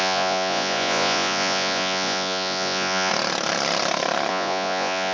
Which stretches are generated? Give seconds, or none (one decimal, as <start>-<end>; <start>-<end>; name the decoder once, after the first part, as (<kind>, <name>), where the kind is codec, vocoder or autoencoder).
0.0-3.1 (vocoder, Vocos); 4.3-5.1